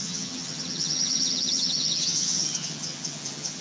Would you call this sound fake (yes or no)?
yes